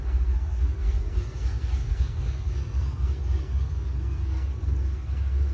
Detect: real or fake fake